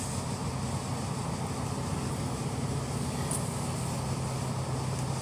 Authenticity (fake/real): real